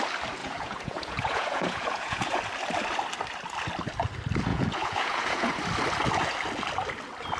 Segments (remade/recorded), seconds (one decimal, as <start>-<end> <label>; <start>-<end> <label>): 0.0-0.4 recorded; 0.4-2.4 remade; 2.4-4.5 recorded; 4.5-5.5 remade; 5.5-7.4 recorded